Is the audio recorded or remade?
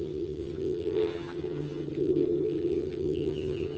remade